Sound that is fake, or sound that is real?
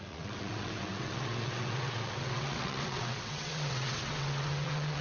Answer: fake